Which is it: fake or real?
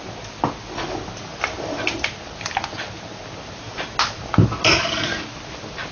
real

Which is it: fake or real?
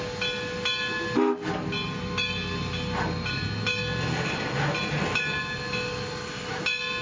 real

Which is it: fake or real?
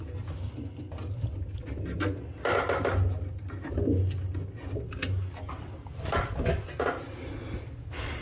real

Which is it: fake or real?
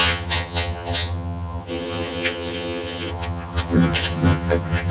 fake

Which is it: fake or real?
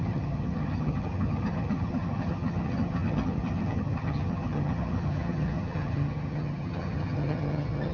fake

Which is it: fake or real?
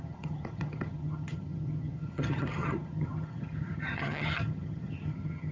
fake